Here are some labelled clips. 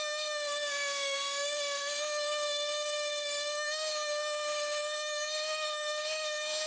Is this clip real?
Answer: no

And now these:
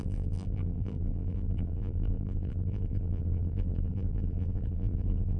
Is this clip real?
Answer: no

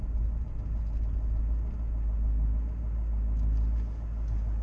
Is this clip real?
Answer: yes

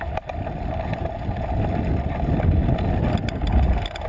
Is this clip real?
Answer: yes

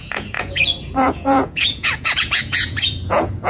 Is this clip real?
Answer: no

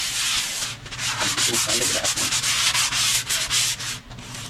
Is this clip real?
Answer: yes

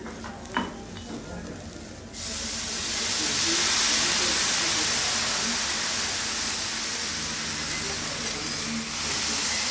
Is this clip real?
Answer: yes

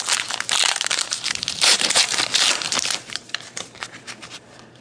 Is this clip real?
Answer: no